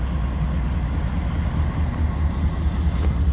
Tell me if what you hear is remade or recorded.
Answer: recorded